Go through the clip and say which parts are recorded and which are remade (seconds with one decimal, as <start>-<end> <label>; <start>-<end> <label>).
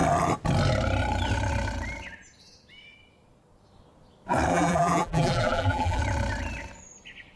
0.0-4.5 recorded; 4.5-6.0 remade; 6.0-7.4 recorded